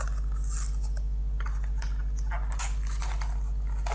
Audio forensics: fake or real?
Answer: real